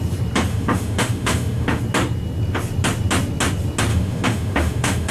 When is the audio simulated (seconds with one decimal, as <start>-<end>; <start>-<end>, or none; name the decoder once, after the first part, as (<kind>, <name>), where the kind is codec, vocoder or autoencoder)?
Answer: 0.5-1.8 (autoencoder, DAC-VAE); 3.9-5.1